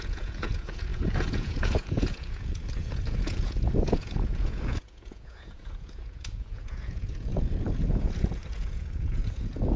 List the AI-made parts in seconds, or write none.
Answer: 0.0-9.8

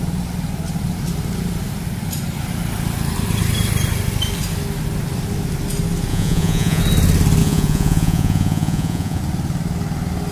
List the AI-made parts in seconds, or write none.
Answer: 6.1-6.8; 7.4-9.2

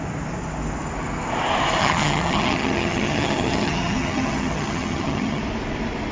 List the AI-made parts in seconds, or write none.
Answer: 1.8-5.4